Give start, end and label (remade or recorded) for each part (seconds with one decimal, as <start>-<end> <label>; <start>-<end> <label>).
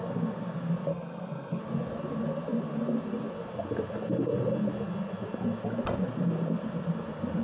0.0-0.9 recorded; 0.9-1.6 remade; 1.6-7.4 recorded